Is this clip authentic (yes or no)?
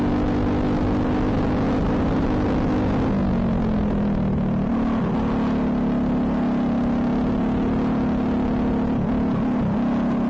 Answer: yes